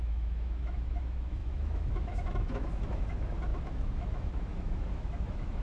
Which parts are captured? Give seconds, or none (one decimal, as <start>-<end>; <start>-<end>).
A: none